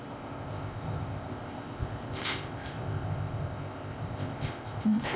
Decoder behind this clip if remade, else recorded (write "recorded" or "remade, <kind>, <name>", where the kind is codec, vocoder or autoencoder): remade, codec, ZipCodec